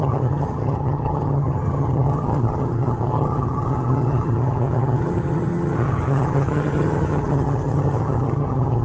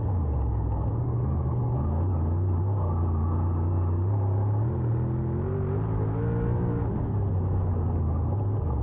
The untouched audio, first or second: second